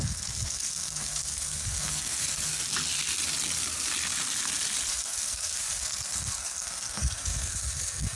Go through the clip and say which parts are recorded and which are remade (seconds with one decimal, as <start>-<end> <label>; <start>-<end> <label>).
0.0-2.6 remade; 2.6-4.9 recorded; 4.9-8.2 remade

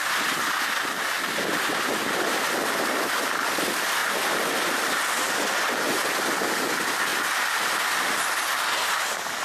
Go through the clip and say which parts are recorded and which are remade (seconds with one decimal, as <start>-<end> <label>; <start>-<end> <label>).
0.0-9.4 recorded